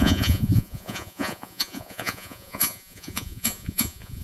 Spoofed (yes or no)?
yes